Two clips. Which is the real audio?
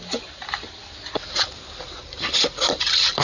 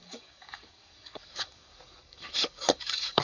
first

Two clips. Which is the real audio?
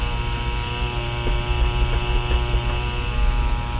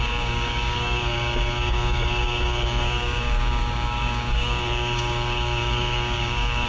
first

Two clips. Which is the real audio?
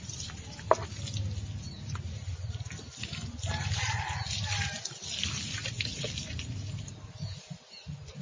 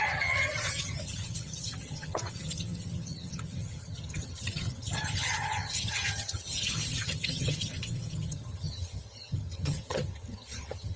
first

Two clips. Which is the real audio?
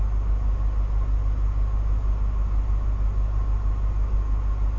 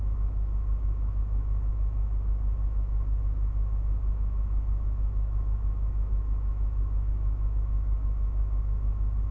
first